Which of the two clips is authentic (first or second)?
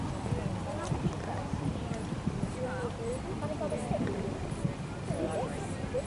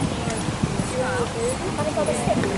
second